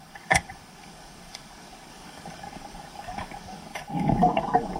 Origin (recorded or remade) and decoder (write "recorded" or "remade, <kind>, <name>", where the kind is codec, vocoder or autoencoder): remade, codec, DAC